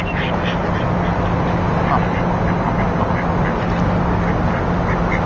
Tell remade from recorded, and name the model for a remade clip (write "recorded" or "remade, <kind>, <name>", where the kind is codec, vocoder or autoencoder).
recorded